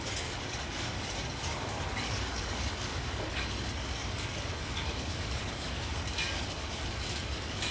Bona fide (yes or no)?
no